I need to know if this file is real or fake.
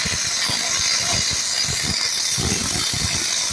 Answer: real